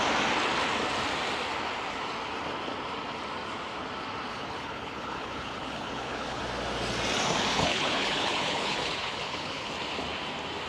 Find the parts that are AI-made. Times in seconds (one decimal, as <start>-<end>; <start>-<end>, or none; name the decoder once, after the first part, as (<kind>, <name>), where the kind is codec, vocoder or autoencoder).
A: 4.3-6.4 (codec, HILCodec); 7.5-9.7